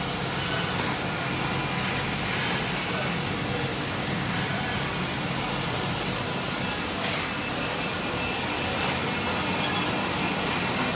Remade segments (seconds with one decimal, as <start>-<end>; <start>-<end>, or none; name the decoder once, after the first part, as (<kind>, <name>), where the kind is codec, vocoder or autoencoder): 3.7-4.3 (codec, DAC)